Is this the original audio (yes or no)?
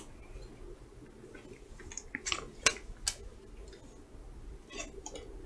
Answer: yes